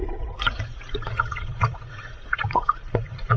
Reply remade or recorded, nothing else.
remade